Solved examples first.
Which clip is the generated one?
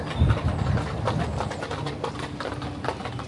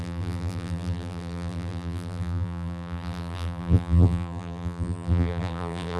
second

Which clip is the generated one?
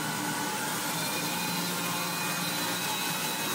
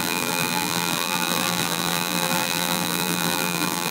second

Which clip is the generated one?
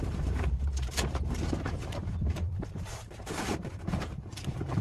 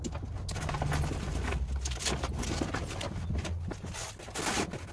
first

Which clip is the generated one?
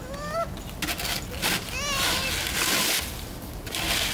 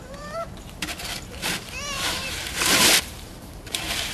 second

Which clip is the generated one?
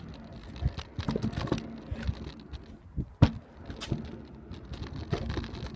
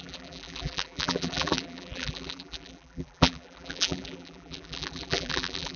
second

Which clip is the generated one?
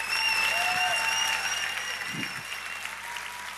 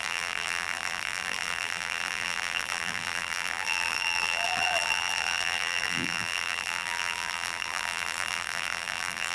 second